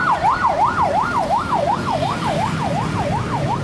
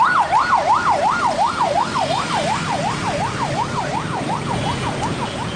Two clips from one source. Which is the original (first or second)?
second